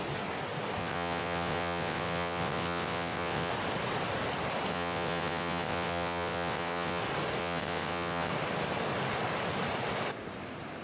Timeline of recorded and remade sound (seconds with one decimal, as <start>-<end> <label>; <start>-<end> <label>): 0.0-0.8 recorded; 0.8-3.5 remade; 3.5-4.7 recorded; 4.7-7.0 remade; 7.0-7.4 recorded; 7.4-8.3 remade; 8.3-10.8 recorded